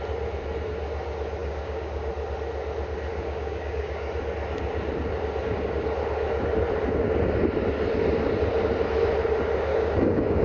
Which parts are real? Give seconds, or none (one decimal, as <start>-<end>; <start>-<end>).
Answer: 0.0-1.4; 2.1-3.1; 4.1-9.7

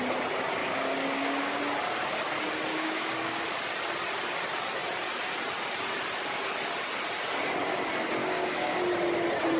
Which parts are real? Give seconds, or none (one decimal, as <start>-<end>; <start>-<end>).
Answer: 0.0-0.6; 1.6-2.7; 3.4-8.2; 8.8-9.6

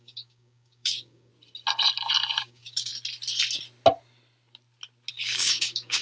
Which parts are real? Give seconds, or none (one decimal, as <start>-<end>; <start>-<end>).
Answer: 1.3-2.4; 2.9-5.1